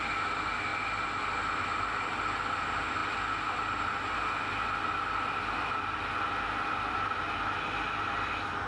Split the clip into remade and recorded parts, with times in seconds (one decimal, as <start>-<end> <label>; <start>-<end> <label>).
0.0-8.7 recorded